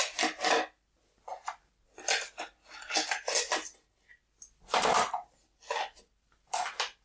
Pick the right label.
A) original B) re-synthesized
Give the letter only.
A